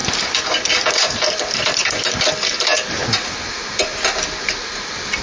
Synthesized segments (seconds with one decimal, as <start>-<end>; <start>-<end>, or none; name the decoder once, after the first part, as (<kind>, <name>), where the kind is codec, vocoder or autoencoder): 0.0-1.4 (vocoder, BigVGAN v2)